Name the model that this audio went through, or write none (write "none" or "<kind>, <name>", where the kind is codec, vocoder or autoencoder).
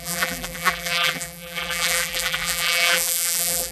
vocoder, BigVGAN v2